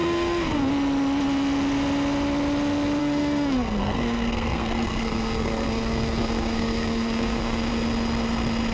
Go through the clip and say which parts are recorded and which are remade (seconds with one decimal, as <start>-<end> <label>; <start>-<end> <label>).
0.0-0.7 remade; 0.7-3.0 recorded; 3.0-7.7 remade; 7.7-8.7 recorded